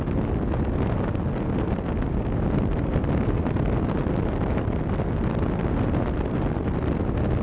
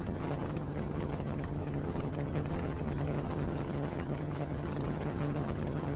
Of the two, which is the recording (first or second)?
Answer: first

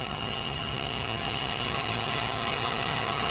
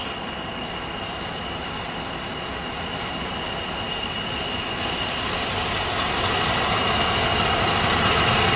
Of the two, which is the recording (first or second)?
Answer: second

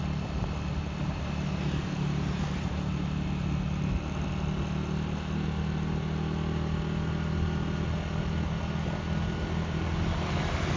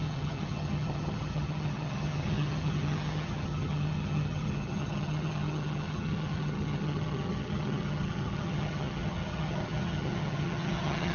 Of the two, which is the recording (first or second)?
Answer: first